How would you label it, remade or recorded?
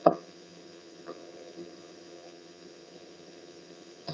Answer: remade